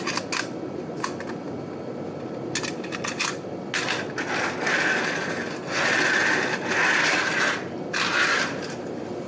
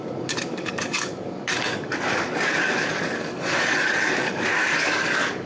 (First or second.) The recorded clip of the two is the first